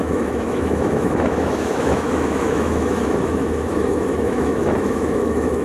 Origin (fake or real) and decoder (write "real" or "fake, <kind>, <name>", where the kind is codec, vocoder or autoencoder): fake, autoencoder, DAC-VAE